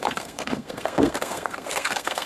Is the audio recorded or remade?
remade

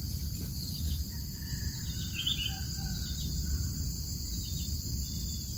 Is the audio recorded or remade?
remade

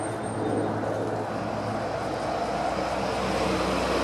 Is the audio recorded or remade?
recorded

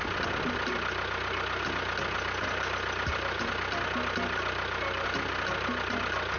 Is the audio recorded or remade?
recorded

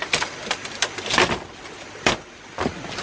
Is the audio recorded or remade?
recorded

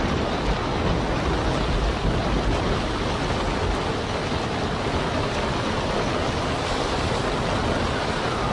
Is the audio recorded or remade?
recorded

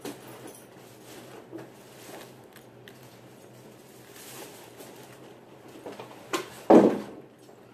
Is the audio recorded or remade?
recorded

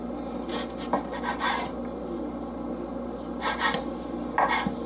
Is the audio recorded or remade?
recorded